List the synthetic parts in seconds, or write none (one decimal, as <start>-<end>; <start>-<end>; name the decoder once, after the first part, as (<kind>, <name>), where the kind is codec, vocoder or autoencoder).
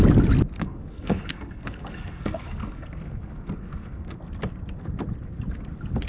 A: 0.6-4.2 (codec, SNAC)